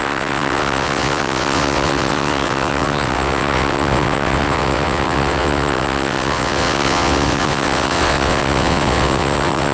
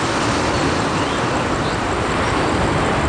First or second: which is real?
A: second